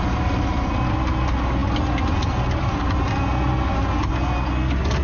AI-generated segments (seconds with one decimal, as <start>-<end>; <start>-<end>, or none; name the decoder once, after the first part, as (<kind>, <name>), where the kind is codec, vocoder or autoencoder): none